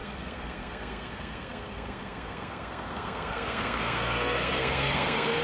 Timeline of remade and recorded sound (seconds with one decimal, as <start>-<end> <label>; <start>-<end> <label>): 0.0-5.4 remade